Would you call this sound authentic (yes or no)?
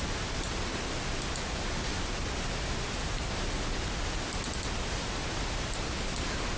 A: yes